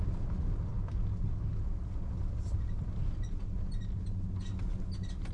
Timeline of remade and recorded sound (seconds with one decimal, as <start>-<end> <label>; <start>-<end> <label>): 0.0-5.3 recorded